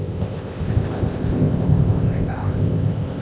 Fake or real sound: fake